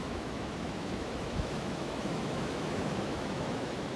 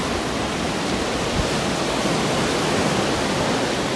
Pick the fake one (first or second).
first